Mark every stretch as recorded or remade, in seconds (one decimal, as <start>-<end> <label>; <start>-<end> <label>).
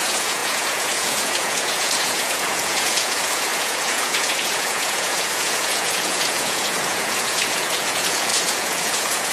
0.0-9.3 remade